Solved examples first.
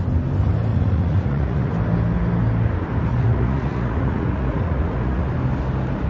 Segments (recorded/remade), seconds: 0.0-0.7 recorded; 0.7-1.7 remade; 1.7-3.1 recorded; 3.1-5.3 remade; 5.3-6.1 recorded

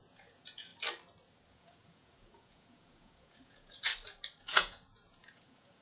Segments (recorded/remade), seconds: 0.0-0.7 remade; 0.7-1.5 recorded; 1.5-3.9 remade; 3.9-4.4 recorded; 4.4-5.8 remade

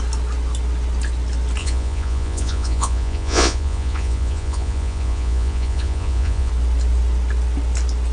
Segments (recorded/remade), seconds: 0.0-1.6 recorded; 1.6-6.5 remade; 6.5-8.1 recorded

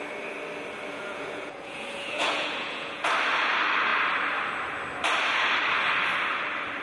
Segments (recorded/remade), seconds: 0.0-0.9 recorded; 0.9-3.1 remade; 3.1-6.8 recorded

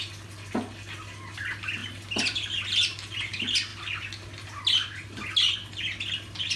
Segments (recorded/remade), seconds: 0.0-6.6 recorded